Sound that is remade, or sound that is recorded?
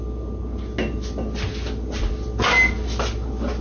recorded